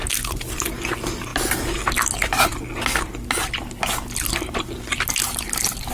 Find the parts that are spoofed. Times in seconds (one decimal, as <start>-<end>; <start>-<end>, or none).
none